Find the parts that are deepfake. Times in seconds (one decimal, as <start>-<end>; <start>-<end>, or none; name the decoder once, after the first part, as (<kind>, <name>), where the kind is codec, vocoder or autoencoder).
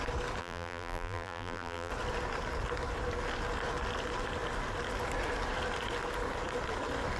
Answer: 0.4-1.9 (vocoder, BigVGAN v2)